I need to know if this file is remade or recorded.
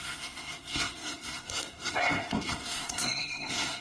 remade